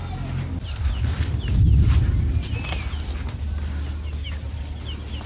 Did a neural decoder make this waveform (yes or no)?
no